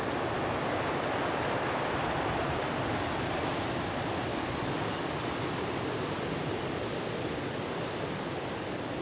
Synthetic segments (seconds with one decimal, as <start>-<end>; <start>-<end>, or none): 4.3-5.1